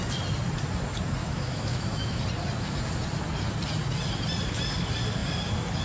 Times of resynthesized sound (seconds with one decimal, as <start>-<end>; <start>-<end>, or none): 1.2-2.2